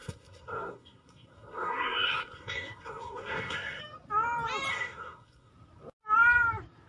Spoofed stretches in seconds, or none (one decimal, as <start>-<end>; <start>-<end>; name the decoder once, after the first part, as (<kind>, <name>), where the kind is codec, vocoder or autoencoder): 0.0-3.8 (codec, SNAC); 4.7-5.5